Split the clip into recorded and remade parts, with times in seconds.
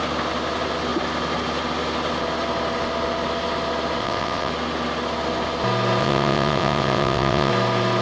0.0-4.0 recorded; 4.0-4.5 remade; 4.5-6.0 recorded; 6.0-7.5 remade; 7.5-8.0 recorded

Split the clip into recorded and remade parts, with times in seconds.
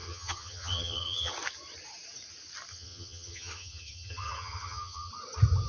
0.0-1.3 remade; 1.3-2.7 recorded; 2.7-5.1 remade; 5.1-5.7 recorded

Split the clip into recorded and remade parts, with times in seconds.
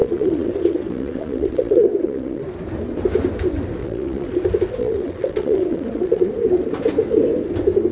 0.0-2.4 remade; 2.4-3.8 recorded; 3.8-4.3 remade; 4.3-4.8 recorded; 4.8-6.3 remade; 6.3-7.9 recorded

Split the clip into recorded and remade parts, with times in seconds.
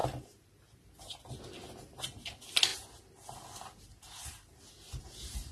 0.0-1.2 remade; 1.2-5.5 recorded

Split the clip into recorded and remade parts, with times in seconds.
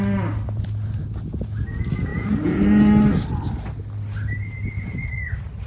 0.0-5.7 recorded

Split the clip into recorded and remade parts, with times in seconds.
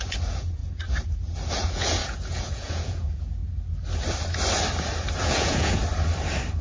0.0-0.6 remade; 0.6-1.5 recorded; 1.5-3.4 remade; 3.4-5.2 recorded; 5.2-5.8 remade; 5.8-6.6 recorded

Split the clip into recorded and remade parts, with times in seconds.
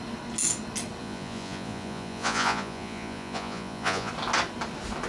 0.0-1.0 recorded; 1.0-4.1 remade; 4.1-5.1 recorded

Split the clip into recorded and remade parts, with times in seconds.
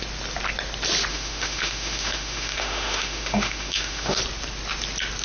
0.0-1.1 recorded; 1.1-4.2 remade; 4.2-5.2 recorded